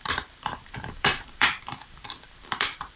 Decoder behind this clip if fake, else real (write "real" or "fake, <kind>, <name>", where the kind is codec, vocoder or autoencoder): fake, vocoder, BigVGAN v2